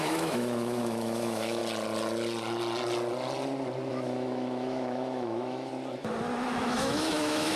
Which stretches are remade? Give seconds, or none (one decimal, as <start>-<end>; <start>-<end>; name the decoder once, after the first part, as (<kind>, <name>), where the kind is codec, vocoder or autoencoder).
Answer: 0.0-1.6 (autoencoder, DAC-VAE); 3.9-5.7; 6.6-7.6